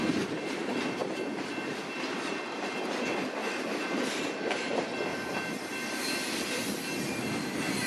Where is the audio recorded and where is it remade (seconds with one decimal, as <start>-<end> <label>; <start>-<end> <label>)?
0.0-3.4 recorded; 3.4-4.4 remade; 4.4-5.1 recorded; 5.1-6.0 remade; 6.0-7.9 recorded